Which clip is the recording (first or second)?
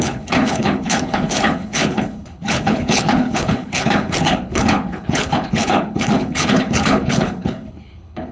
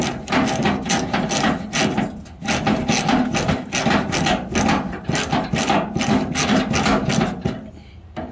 second